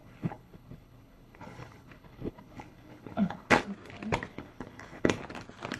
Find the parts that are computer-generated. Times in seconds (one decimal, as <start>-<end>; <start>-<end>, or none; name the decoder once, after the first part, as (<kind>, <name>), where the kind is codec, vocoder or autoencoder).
0.0-3.5 (codec, HILCodec); 4.3-5.2